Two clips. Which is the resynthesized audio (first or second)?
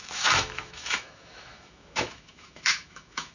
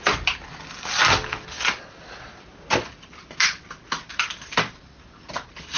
first